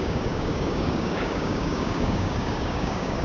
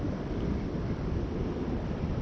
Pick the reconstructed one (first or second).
first